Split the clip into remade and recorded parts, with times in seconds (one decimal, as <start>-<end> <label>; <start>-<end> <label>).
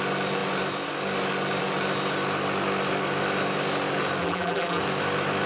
0.0-4.2 recorded; 4.2-4.8 remade; 4.8-5.5 recorded